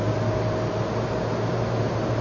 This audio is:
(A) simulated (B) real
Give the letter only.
B